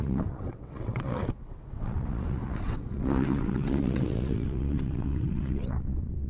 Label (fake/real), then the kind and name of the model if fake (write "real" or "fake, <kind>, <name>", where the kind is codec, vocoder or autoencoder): fake, vocoder, WaveNeXt